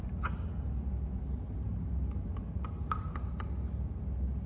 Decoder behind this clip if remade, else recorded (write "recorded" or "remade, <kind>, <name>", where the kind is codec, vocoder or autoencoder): recorded